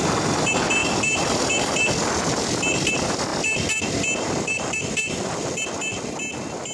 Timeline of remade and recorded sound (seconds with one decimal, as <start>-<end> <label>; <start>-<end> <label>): 0.0-0.8 recorded; 0.8-2.0 remade; 2.0-3.3 recorded; 3.3-5.3 remade; 5.3-6.7 recorded